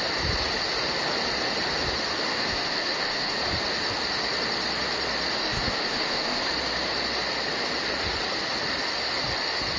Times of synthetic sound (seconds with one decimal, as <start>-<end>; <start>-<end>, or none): 2.3-3.4; 5.4-6.5